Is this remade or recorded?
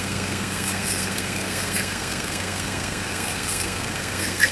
remade